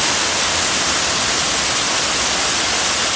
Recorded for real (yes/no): yes